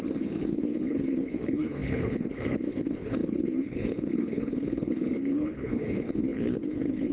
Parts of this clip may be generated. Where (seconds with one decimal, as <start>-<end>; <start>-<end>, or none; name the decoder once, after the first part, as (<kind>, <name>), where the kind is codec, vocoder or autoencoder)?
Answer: 0.0-7.1 (codec, HILCodec)